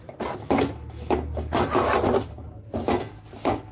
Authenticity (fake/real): real